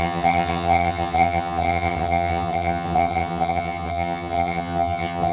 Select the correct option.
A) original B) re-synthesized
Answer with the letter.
B